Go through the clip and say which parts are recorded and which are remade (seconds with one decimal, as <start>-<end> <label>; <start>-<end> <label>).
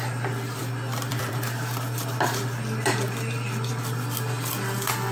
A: 0.0-0.6 recorded; 0.6-1.3 remade; 1.3-5.1 recorded